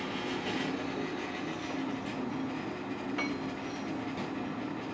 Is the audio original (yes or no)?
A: yes